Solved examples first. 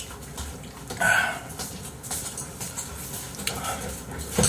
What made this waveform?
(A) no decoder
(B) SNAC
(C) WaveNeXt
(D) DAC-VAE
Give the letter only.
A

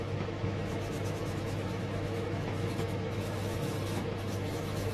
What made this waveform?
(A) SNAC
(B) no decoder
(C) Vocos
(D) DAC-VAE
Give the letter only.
D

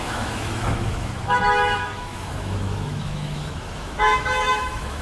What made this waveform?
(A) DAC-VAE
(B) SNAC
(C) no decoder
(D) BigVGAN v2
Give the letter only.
A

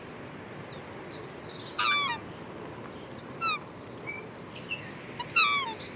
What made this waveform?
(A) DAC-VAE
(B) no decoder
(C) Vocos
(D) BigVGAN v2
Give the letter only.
B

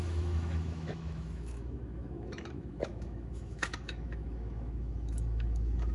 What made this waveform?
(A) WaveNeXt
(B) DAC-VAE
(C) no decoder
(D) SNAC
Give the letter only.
B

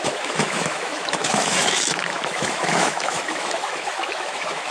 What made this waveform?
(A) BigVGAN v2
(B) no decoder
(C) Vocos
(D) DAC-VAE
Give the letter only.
D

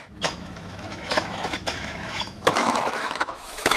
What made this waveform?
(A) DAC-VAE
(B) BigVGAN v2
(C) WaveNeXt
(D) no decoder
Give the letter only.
A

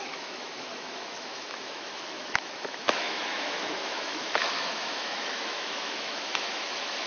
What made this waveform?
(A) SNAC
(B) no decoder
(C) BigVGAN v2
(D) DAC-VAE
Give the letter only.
D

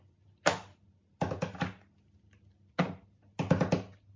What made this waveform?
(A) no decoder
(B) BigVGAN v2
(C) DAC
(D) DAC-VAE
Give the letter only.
A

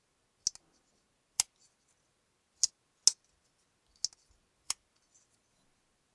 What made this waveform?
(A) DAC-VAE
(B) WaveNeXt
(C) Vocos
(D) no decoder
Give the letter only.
D